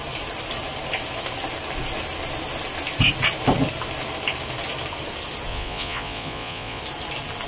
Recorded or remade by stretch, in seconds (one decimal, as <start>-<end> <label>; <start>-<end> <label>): 0.0-5.5 recorded; 5.5-6.8 remade; 6.8-7.5 recorded